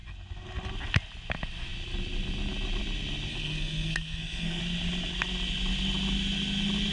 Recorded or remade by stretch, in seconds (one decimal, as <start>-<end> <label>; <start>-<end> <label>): 0.0-3.3 recorded; 3.3-4.6 remade; 4.6-6.9 recorded